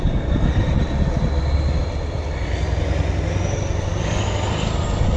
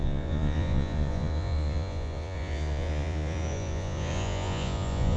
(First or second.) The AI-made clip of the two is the second